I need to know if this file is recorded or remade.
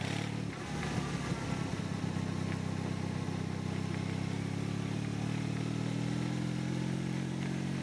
recorded